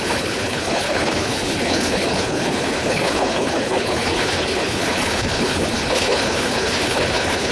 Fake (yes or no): yes